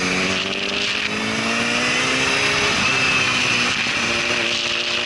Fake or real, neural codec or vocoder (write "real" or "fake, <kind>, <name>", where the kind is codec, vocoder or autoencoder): real